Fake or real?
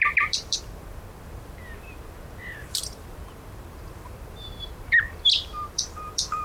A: fake